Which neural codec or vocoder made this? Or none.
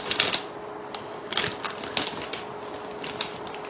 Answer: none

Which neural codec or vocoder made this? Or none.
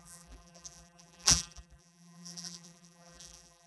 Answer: vocoder, BigVGAN v2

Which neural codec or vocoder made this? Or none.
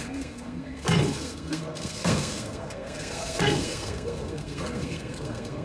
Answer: codec, SNAC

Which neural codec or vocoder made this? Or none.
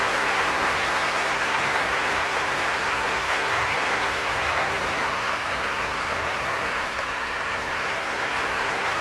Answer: codec, SNAC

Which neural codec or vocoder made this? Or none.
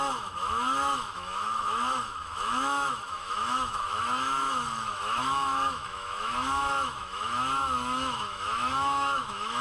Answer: autoencoder, DAC-VAE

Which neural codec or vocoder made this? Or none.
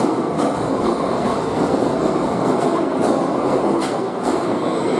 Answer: codec, SNAC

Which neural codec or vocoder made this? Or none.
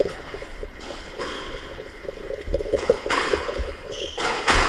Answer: codec, HILCodec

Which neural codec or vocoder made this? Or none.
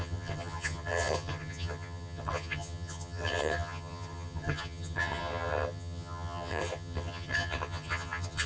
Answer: vocoder, HiFi-GAN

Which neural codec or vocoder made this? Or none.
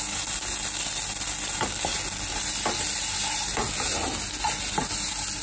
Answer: none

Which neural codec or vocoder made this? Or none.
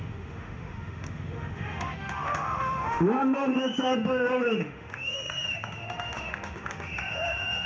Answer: autoencoder, DAC-VAE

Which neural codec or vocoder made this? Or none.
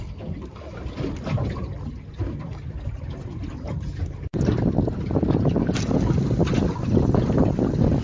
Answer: none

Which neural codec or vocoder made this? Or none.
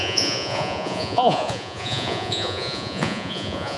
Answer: vocoder, Vocos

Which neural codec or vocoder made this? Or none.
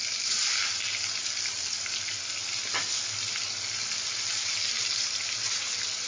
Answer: none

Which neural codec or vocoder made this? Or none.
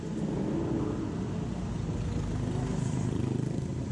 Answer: none